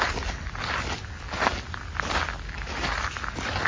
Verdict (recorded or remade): recorded